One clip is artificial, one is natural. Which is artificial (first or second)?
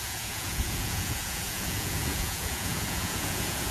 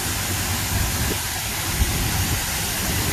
first